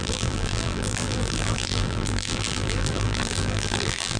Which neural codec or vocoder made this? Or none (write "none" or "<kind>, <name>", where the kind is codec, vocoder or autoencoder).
vocoder, BigVGAN v2